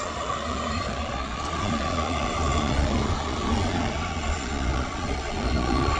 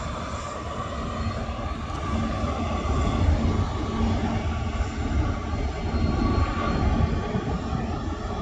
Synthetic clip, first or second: first